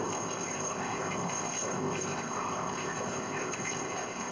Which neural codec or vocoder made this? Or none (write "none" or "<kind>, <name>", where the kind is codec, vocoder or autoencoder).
codec, ZipCodec